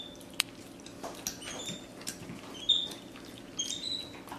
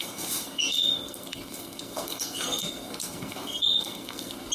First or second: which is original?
first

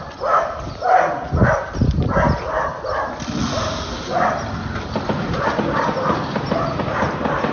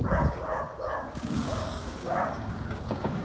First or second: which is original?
first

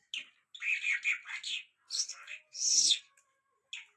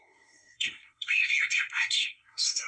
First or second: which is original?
first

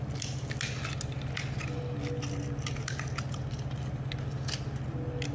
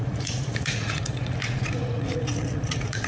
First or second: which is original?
first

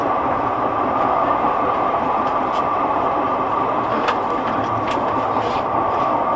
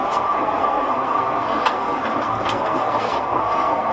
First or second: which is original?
first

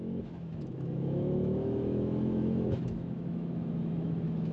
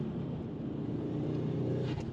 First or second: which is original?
second